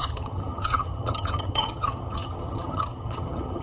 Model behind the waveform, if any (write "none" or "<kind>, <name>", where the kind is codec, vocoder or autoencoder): vocoder, HiFi-GAN